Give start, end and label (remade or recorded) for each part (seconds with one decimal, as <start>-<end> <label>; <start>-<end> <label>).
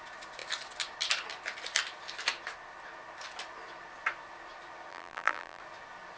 0.0-4.9 recorded; 4.9-5.6 remade; 5.6-6.2 recorded